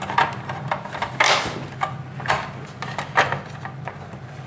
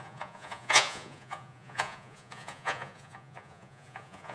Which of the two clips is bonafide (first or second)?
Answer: first